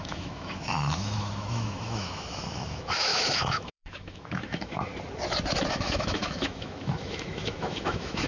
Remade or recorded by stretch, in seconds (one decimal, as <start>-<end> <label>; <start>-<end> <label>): 0.0-4.9 remade; 4.9-5.7 recorded; 5.7-8.3 remade